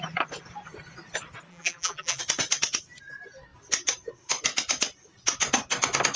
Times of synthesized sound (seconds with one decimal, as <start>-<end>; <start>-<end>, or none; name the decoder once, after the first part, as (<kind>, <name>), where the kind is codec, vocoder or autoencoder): 1.5-2.2 (vocoder, BigVGAN v2)